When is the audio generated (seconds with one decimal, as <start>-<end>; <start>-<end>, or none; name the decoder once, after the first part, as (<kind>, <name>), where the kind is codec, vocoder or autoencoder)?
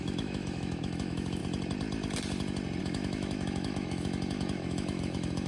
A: 0.0-1.4 (autoencoder, DAC-VAE); 2.8-5.5